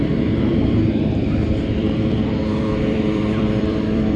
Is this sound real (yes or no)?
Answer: no